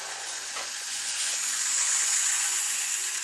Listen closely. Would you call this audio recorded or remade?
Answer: remade